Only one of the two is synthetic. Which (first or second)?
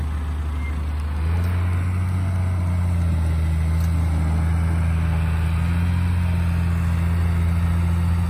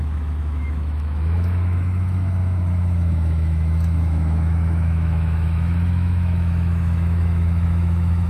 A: second